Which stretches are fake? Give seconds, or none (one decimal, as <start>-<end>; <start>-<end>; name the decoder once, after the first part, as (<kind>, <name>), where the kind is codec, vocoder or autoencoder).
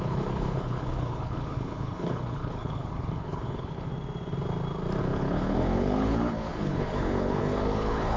0.0-3.9 (codec, HILCodec); 5.0-8.2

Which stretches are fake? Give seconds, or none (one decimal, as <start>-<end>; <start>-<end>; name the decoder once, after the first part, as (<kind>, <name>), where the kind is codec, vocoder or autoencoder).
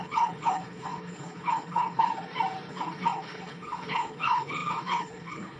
0.0-2.1 (codec, HILCodec); 2.7-5.6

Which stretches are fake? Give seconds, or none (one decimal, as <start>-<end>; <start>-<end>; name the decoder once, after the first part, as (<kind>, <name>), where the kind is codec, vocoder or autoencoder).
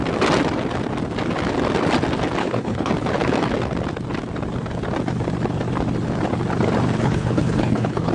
2.4-2.9 (codec, HILCodec); 7.0-8.1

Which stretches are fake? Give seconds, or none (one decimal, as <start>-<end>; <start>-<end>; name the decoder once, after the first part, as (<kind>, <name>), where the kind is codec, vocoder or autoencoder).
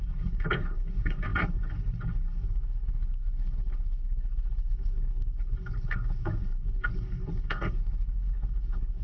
0.0-9.0 (codec, HILCodec)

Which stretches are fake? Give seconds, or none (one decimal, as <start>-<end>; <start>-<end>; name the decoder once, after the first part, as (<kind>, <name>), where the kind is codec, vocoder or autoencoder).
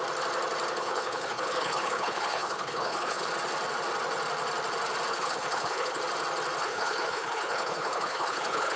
0.8-3.3 (codec, HILCodec); 5.1-6.0; 6.6-8.8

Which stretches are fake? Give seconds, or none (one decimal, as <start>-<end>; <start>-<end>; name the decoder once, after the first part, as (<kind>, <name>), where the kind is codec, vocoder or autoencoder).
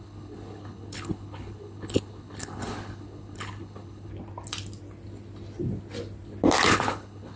0.0-4.1 (codec, HILCodec); 6.7-7.4